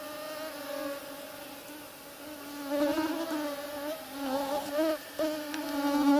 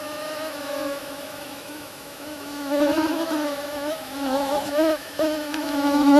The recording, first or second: first